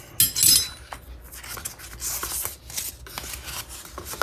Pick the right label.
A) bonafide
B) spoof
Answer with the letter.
A